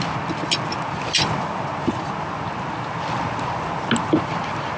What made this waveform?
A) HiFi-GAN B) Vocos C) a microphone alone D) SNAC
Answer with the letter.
C